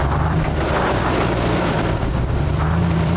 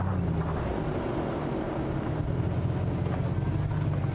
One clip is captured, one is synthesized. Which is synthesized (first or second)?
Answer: first